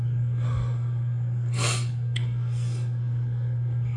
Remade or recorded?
remade